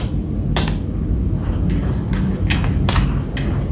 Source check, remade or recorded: recorded